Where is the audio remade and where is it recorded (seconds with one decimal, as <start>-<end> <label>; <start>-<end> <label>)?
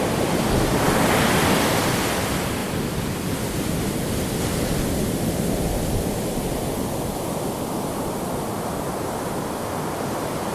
0.0-10.5 recorded